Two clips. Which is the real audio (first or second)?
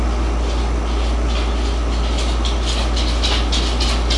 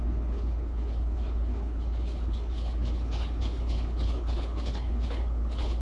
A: first